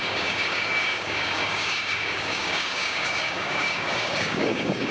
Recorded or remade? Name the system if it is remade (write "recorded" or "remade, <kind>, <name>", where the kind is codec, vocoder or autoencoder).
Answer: remade, codec, DAC